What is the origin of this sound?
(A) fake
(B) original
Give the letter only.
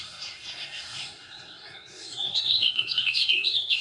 A